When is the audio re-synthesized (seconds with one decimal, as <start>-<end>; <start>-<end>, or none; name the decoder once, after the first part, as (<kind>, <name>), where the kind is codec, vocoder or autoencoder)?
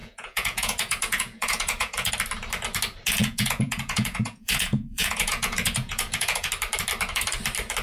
0.0-2.1 (vocoder, Vocos); 3.2-6.5